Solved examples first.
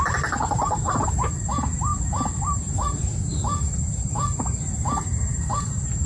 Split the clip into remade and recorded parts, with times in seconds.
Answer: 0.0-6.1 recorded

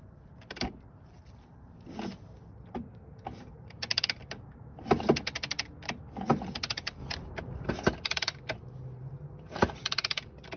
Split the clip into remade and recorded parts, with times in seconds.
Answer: 0.0-10.6 recorded